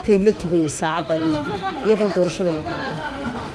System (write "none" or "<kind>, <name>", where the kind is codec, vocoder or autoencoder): autoencoder, DAC-VAE